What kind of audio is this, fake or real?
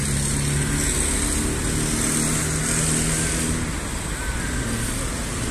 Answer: real